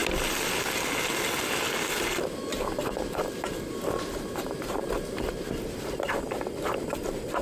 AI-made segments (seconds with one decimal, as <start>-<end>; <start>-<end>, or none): 2.5-5.7